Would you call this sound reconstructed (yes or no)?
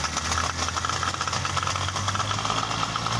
no